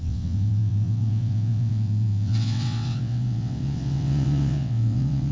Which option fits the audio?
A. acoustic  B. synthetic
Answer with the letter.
B